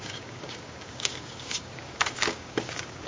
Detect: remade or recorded remade